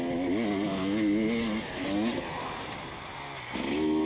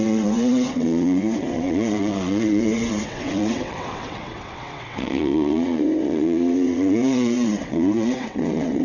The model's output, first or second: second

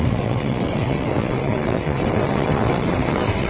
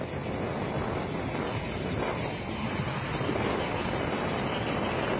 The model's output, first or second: first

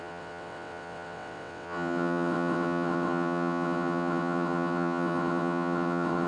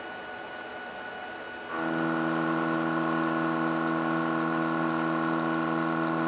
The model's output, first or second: first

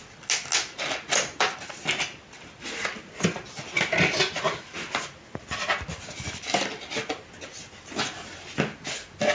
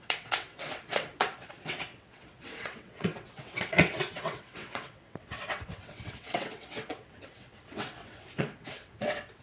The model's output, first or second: second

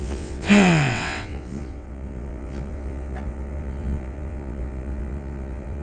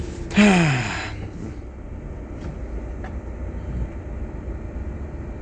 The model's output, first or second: first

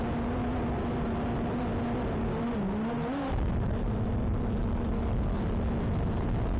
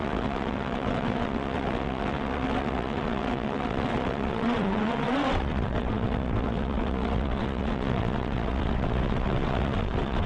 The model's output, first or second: second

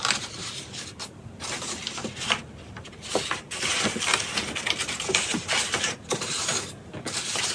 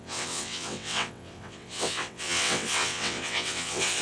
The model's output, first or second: second